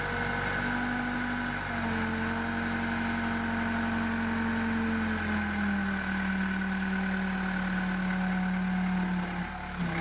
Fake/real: real